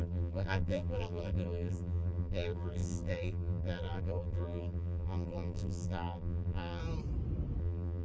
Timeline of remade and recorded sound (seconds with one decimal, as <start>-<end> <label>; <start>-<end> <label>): 0.0-6.8 remade; 6.8-7.6 recorded; 7.6-8.0 remade